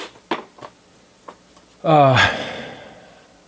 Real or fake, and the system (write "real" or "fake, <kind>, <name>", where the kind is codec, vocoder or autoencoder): real